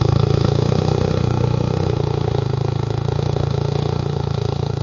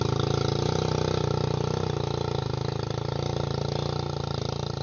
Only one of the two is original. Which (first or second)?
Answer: second